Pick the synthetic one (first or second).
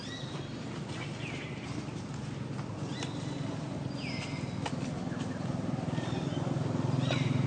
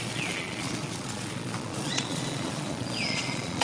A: second